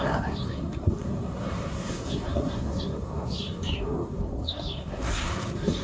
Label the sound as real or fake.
fake